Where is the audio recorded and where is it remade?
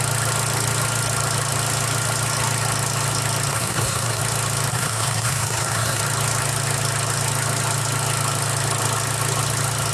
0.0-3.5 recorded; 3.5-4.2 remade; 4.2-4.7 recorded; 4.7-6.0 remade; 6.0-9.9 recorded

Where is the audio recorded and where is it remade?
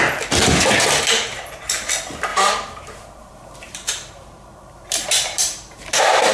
0.0-1.3 recorded; 1.3-1.9 remade; 1.9-2.3 recorded; 2.3-6.3 remade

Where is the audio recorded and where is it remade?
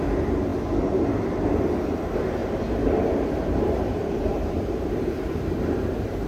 0.0-2.4 recorded; 2.4-6.3 remade